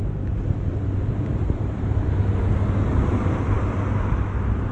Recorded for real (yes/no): yes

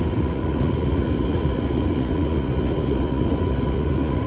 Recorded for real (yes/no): no